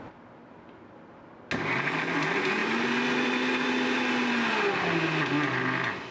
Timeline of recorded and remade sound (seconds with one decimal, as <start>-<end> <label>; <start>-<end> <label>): 0.0-6.1 recorded